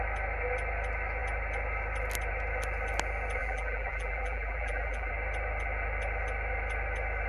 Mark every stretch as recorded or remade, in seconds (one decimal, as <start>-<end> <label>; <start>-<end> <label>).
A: 0.0-3.4 recorded; 3.4-5.1 remade; 5.1-7.3 recorded

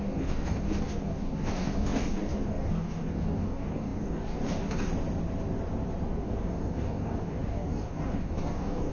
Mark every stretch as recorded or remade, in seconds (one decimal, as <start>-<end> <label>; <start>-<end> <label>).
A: 0.0-4.9 remade; 4.9-6.1 recorded; 6.1-8.9 remade

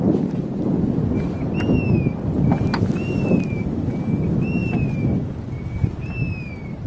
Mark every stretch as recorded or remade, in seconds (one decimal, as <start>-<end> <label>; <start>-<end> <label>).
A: 0.0-6.9 recorded

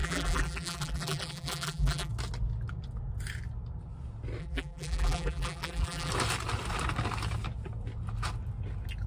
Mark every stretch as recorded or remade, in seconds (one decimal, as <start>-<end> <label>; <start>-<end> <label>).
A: 0.0-2.1 remade; 2.1-4.4 recorded; 4.4-6.1 remade; 6.1-9.1 recorded

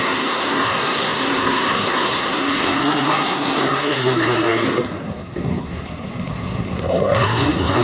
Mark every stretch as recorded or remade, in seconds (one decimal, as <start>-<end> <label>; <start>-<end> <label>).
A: 0.0-7.8 remade

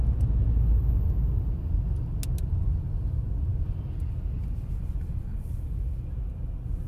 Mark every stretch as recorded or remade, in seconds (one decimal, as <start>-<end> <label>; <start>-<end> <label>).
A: 0.0-6.9 recorded

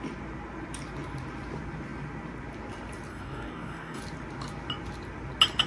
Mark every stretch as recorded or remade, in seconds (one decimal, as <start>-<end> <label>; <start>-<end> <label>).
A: 0.0-3.1 recorded; 3.1-4.0 remade; 4.0-5.7 recorded